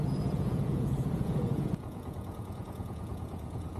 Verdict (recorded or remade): remade